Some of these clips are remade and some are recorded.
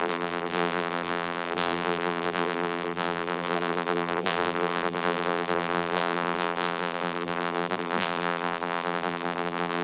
remade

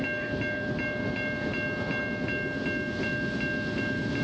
recorded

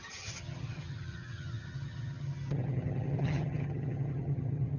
remade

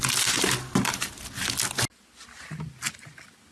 recorded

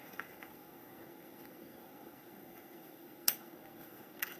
remade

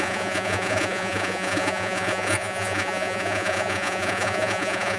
remade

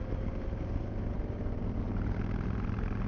recorded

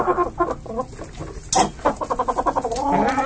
recorded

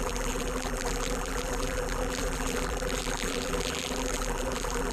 remade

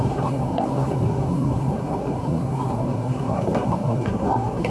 remade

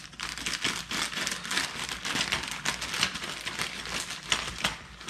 recorded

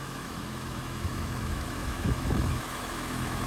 remade